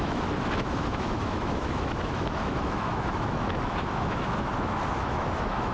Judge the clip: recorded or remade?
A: remade